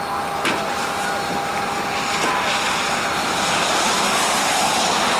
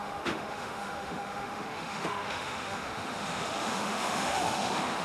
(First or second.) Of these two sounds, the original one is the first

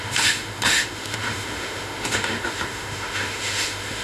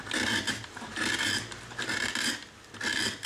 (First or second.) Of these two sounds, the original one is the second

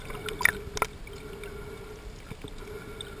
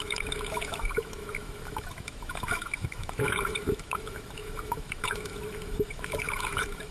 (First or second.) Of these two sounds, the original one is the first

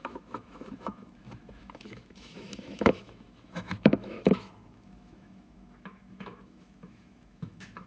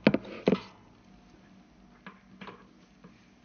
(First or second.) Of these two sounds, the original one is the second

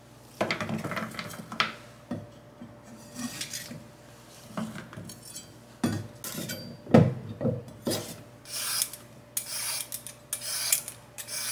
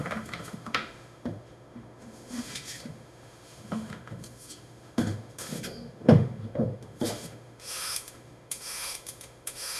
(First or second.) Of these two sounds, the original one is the first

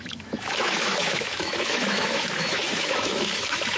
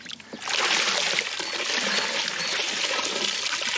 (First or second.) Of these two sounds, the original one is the second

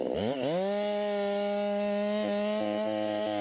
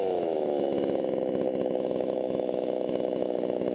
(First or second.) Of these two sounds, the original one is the first